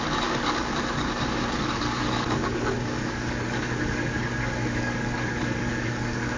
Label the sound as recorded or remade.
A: remade